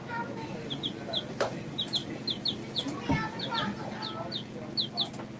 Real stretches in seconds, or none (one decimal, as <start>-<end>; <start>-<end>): 0.5-5.4